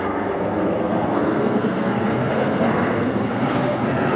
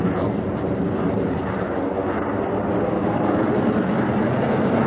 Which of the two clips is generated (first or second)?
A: first